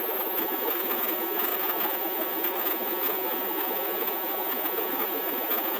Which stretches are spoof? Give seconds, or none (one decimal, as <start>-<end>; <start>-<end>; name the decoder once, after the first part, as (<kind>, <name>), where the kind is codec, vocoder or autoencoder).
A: 0.0-5.8 (vocoder, Vocos)